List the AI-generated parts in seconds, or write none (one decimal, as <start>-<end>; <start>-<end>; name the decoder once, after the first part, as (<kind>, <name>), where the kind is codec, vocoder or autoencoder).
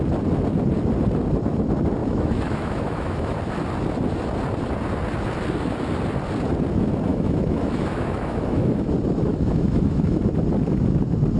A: 2.0-3.4 (autoencoder, DAC-VAE); 7.1-8.9; 9.3-10.2